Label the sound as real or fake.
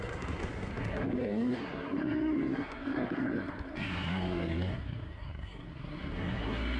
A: fake